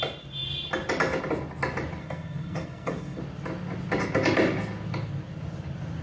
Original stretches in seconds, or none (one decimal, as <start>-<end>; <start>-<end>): 0.0-2.0; 3.2-6.0